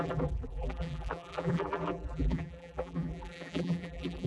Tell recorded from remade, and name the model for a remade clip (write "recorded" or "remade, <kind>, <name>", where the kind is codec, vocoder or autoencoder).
remade, vocoder, BigVGAN v2